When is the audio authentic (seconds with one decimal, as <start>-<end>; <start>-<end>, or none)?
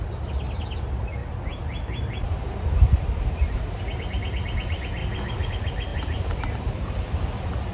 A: 0.0-1.2; 3.8-5.9; 7.2-7.7